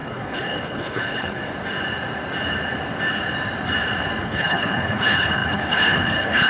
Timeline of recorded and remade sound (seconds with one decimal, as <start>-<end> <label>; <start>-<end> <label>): 0.0-1.4 remade; 1.4-4.2 recorded; 4.2-6.5 remade

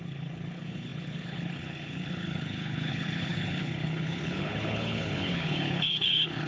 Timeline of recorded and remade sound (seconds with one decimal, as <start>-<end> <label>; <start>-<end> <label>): 0.0-6.5 remade

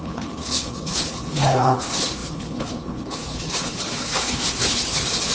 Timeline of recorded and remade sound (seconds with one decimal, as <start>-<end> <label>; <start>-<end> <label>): 0.0-5.3 remade

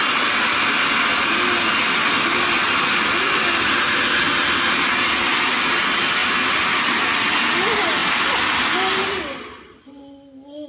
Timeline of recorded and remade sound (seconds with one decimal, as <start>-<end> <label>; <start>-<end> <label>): 0.0-10.7 recorded